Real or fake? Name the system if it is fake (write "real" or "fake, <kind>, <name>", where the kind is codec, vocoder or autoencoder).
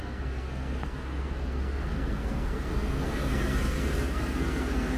fake, codec, SNAC